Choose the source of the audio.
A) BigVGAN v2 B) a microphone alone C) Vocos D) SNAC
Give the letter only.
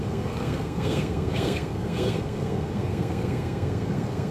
D